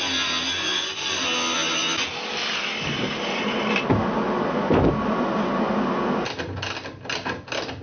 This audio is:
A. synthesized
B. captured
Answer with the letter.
B